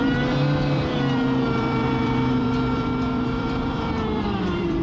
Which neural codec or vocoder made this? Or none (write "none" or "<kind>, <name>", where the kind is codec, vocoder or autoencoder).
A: vocoder, BigVGAN v2